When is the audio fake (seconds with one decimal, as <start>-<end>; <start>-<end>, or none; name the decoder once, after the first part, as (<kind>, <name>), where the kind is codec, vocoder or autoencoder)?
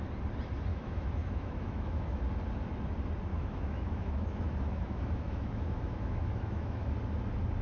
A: 0.7-2.2 (autoencoder, DAC-VAE); 3.3-6.9